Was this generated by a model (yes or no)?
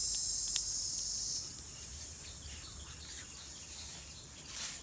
no